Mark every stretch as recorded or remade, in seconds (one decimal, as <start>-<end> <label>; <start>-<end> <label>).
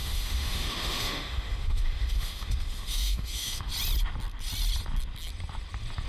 0.0-3.7 remade; 3.7-6.1 recorded